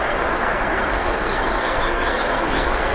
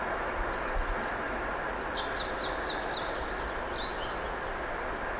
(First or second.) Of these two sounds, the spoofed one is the first